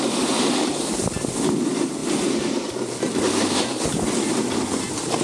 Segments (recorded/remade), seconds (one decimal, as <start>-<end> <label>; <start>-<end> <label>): 0.0-2.0 recorded; 2.0-4.5 remade; 4.5-5.2 recorded